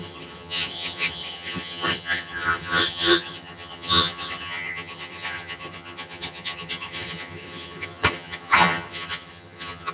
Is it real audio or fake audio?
fake